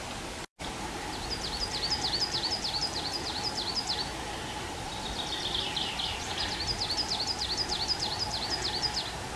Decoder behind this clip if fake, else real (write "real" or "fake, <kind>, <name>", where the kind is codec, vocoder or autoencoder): real